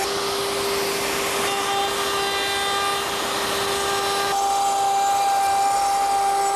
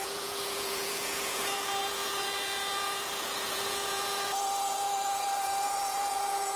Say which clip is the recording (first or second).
first